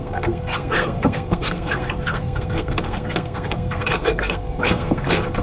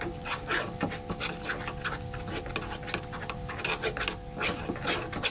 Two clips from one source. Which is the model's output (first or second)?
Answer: first